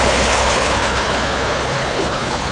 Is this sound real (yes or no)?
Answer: no